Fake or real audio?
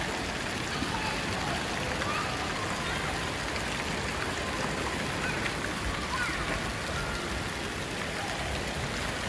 real